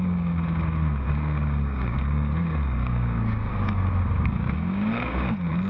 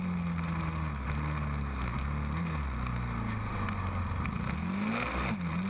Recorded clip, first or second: second